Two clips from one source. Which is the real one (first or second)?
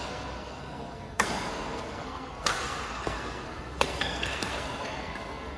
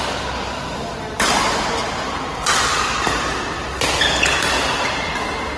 second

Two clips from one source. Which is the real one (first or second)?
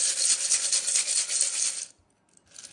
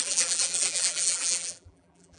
first